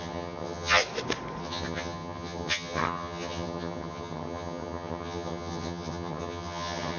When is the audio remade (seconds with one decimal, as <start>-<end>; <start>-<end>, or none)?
0.0-0.8; 1.4-7.0